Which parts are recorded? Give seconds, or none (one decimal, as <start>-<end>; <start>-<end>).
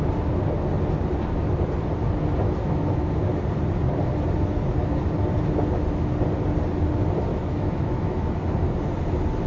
0.0-2.6; 3.4-7.3; 8.3-9.5